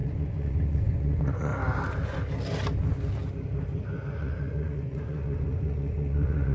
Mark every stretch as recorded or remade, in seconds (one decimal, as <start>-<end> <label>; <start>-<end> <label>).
0.0-1.5 remade; 1.5-4.1 recorded; 4.1-6.5 remade